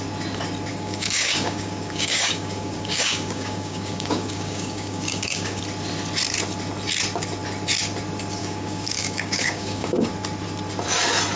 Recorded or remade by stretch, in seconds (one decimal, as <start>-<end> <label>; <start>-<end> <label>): 0.0-0.7 recorded; 0.7-5.6 remade; 5.6-8.4 recorded; 8.4-10.1 remade; 10.1-11.4 recorded